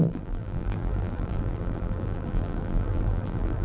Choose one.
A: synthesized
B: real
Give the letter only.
A